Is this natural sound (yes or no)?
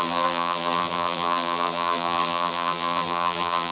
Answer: no